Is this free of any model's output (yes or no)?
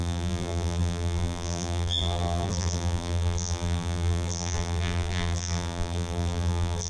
no